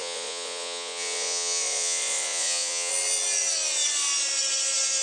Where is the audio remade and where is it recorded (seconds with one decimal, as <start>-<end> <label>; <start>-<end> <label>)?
0.0-2.9 remade; 2.9-5.0 recorded

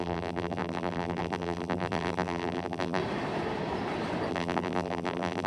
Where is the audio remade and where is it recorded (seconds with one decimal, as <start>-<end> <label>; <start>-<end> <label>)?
0.0-3.0 remade; 3.0-4.3 recorded; 4.3-5.5 remade

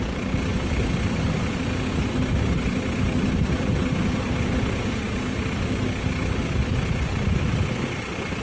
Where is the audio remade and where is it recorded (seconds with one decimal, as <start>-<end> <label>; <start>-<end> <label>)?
0.0-8.4 recorded

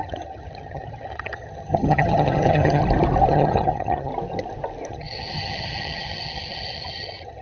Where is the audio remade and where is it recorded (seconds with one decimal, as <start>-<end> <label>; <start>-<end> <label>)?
0.0-2.8 remade; 2.8-3.3 recorded; 3.3-4.1 remade; 4.1-4.9 recorded; 4.9-7.4 remade

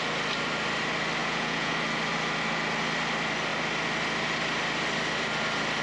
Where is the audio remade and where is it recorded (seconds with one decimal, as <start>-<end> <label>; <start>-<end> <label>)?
0.0-1.2 recorded; 1.2-1.7 remade; 1.7-5.8 recorded